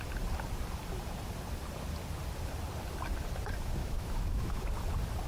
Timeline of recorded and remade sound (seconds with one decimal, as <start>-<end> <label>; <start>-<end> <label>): 0.0-3.8 recorded; 3.8-4.6 remade; 4.6-5.3 recorded